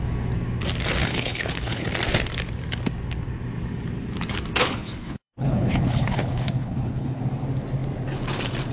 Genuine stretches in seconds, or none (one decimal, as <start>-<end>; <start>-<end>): 0.0-1.0; 1.9-4.6; 7.2-8.7